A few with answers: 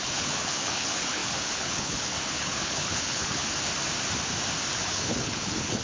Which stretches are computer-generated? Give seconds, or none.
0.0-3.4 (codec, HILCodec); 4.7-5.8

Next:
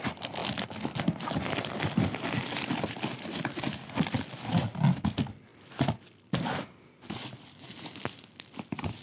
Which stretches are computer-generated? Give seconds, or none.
none

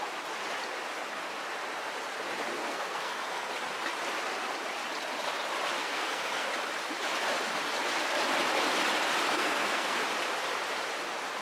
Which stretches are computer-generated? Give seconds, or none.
2.6-3.5 (codec, SNAC); 5.8-6.5; 9.3-10.0

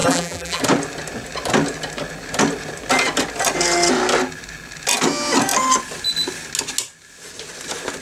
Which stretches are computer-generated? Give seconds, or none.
0.0-0.6 (vocoder, BigVGAN v2)